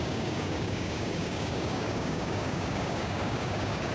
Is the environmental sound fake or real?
fake